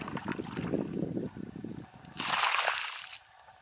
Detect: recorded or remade recorded